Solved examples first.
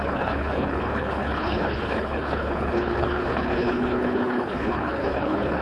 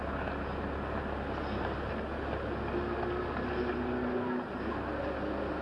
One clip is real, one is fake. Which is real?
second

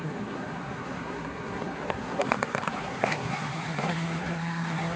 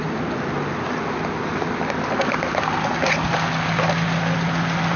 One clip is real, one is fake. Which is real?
second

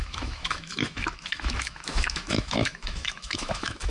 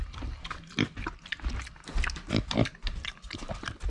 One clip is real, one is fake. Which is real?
second